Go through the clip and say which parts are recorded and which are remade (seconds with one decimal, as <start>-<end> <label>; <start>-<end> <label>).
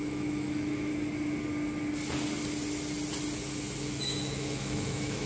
0.0-0.9 remade; 0.9-3.8 recorded; 3.8-5.3 remade